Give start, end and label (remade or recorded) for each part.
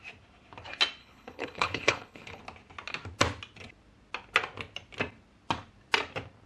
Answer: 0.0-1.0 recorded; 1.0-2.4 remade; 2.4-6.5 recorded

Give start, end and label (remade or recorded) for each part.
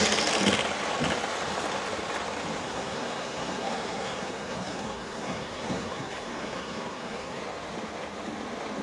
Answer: 0.0-2.6 recorded; 2.6-7.4 remade; 7.4-8.8 recorded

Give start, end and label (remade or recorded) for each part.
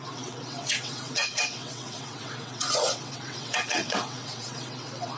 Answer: 0.0-5.2 remade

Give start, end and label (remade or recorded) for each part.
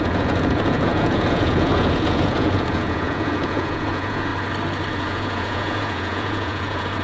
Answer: 0.0-4.3 remade; 4.3-4.9 recorded; 4.9-7.0 remade